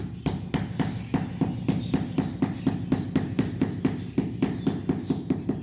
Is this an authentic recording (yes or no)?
yes